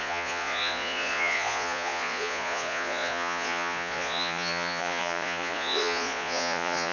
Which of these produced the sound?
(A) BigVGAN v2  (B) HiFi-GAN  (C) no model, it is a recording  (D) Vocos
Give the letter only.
D